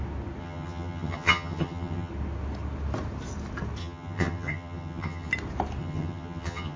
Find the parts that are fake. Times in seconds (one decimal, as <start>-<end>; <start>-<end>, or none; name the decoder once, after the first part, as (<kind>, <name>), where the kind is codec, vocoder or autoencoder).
0.4-2.1 (vocoder, HiFi-GAN); 3.8-5.3; 5.8-6.8